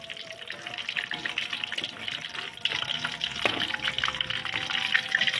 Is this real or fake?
real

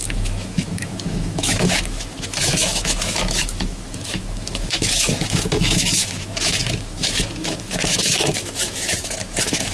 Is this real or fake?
fake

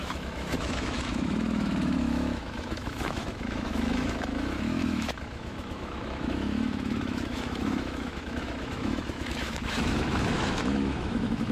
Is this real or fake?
fake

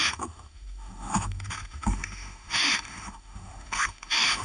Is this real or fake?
fake